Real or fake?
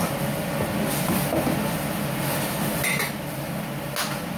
real